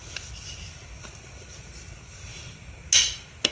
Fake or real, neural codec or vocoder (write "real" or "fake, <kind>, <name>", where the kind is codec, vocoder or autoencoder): real